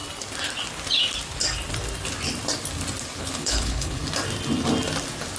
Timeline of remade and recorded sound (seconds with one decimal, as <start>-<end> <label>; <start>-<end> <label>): 0.0-3.2 recorded; 3.2-4.0 remade; 4.0-5.4 recorded